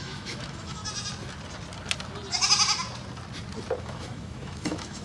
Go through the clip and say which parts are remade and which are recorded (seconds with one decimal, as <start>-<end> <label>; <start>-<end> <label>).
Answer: 0.0-0.8 remade; 0.8-3.8 recorded; 3.8-5.0 remade